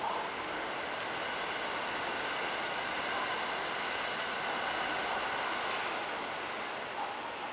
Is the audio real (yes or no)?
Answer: yes